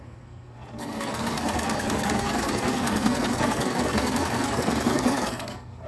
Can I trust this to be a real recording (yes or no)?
no